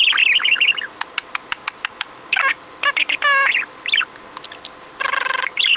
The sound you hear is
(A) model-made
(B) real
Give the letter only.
B